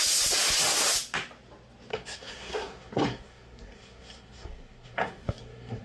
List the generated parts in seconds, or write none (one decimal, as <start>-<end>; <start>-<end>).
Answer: 1.9-5.8